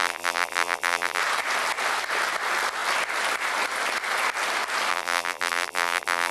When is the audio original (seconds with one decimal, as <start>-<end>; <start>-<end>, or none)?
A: 1.2-4.9